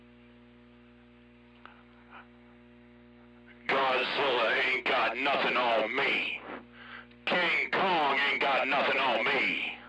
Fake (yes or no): no